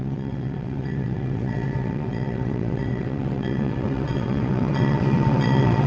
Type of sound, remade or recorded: remade